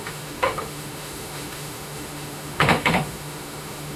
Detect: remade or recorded remade